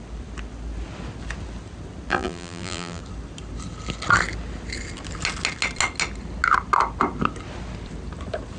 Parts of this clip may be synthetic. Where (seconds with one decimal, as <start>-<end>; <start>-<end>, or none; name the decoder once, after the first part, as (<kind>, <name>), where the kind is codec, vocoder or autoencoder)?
2.1-3.0 (vocoder, BigVGAN v2)